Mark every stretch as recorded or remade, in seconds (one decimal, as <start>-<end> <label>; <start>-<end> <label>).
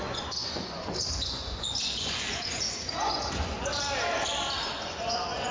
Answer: 0.0-3.7 remade; 3.7-4.6 recorded; 4.6-5.5 remade